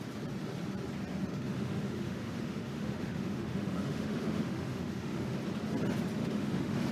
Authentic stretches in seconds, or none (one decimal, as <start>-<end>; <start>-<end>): 0.0-1.3; 5.4-6.2